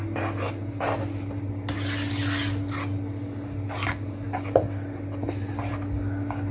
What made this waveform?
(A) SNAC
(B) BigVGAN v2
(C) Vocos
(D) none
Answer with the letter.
D